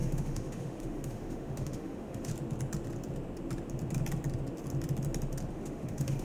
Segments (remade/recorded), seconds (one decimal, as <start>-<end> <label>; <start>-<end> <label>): 0.0-2.3 remade; 2.3-5.5 recorded; 5.5-6.2 remade